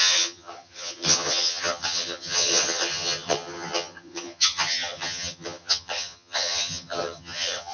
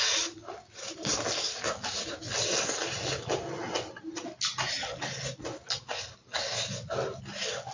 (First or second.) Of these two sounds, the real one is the second